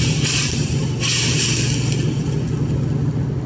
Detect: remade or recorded recorded